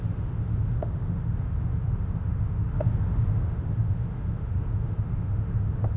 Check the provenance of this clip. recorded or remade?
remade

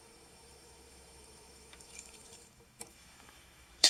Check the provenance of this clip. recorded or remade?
remade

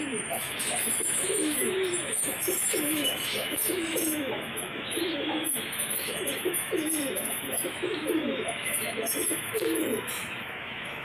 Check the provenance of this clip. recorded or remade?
remade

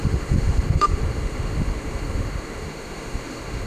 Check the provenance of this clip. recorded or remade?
remade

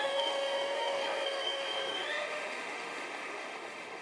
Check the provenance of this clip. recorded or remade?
remade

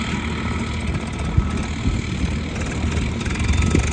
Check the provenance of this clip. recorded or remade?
recorded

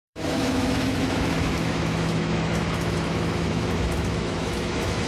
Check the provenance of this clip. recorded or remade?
remade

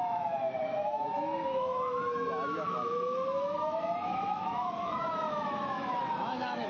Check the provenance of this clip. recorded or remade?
remade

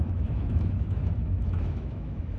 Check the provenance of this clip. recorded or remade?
remade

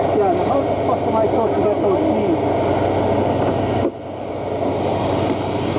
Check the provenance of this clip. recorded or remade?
recorded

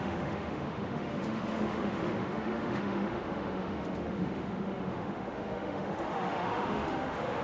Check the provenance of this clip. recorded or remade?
remade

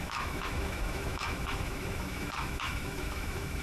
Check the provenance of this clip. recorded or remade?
remade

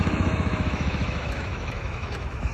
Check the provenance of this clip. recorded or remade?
remade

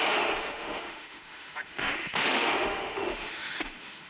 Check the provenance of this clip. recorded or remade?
remade